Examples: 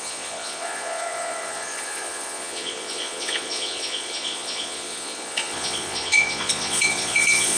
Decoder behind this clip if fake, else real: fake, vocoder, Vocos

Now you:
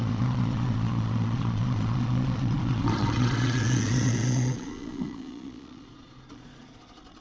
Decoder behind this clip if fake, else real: fake, vocoder, Vocos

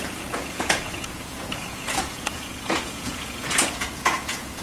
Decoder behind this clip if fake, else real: fake, vocoder, Vocos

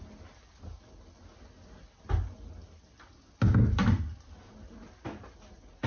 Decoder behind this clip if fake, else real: real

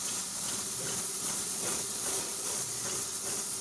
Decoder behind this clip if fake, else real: fake, vocoder, Vocos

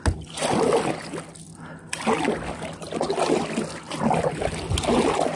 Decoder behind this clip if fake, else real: real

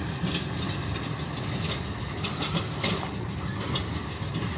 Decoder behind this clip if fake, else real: real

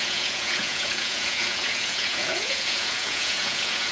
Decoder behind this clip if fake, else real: fake, vocoder, Vocos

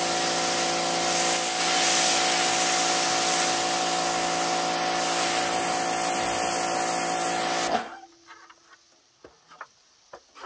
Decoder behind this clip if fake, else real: real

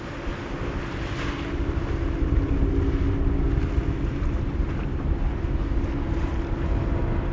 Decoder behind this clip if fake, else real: real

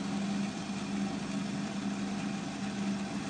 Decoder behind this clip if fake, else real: real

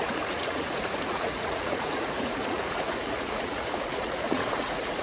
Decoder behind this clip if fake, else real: fake, vocoder, Vocos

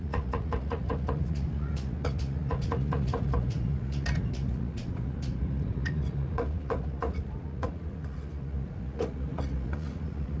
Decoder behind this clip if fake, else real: fake, vocoder, Vocos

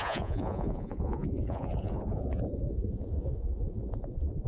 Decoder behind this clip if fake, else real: fake, vocoder, Vocos